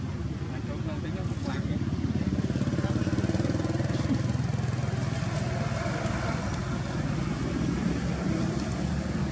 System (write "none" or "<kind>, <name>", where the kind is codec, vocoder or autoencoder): none